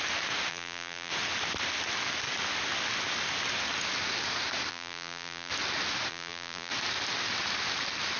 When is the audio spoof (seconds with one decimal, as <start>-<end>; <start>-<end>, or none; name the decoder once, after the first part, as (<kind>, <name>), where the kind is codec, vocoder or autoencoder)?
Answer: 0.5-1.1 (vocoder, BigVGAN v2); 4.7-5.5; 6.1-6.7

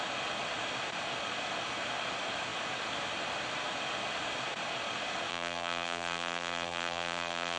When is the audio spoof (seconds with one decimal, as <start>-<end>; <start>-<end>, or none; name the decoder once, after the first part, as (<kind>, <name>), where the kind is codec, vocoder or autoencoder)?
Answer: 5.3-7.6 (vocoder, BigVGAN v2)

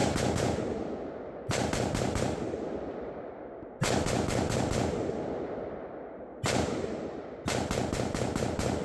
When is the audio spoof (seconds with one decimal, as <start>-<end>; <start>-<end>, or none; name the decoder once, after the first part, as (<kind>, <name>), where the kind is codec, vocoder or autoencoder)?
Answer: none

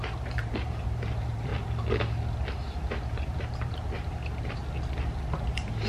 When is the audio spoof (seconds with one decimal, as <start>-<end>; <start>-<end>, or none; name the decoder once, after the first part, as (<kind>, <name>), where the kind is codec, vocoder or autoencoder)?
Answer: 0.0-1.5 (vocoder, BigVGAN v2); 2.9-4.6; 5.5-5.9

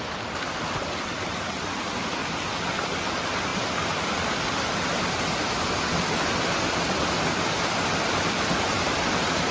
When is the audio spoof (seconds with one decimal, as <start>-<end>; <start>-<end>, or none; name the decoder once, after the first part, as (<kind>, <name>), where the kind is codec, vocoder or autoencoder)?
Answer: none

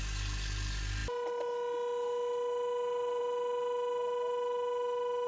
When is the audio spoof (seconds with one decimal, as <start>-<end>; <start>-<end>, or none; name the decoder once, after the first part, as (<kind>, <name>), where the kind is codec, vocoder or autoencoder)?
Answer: none